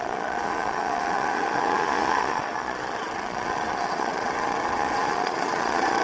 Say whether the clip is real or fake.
fake